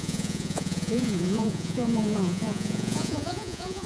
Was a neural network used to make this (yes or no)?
yes